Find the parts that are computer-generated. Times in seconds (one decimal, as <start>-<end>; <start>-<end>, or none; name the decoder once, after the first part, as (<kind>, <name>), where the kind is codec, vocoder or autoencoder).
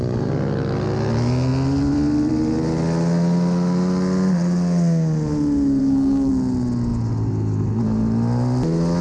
5.8-6.3 (codec, SNAC)